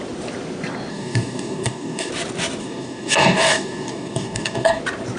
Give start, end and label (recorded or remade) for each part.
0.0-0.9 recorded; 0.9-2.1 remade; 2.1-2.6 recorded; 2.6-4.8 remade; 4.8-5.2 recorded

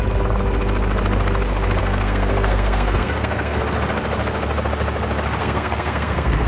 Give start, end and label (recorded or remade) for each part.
0.0-1.8 recorded; 1.8-3.6 remade; 3.6-5.4 recorded; 5.4-6.5 remade

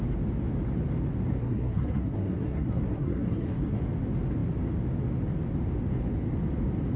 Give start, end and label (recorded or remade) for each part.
0.0-1.3 recorded; 1.3-3.8 remade; 3.8-7.0 recorded